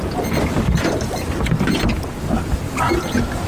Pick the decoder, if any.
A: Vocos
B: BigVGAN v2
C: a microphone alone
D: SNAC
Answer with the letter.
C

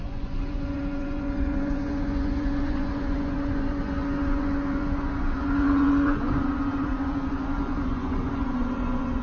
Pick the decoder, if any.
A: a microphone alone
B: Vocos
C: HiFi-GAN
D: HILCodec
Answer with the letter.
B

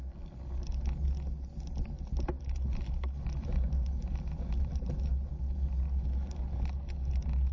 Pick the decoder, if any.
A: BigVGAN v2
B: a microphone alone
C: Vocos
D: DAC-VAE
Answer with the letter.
B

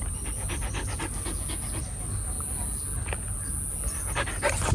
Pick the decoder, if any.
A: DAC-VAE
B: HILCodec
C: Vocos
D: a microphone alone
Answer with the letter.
D